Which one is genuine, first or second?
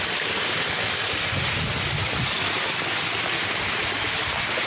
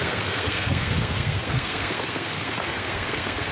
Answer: first